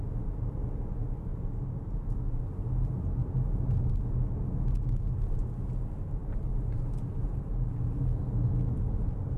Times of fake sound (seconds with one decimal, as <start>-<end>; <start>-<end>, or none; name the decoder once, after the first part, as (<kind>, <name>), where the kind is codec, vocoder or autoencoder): 1.3-2.4 (vocoder, BigVGAN v2); 6.2-7.4